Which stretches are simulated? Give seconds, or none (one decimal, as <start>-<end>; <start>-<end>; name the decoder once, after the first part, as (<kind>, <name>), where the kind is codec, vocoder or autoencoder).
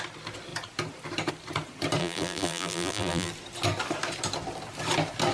2.0-3.3 (vocoder, BigVGAN v2)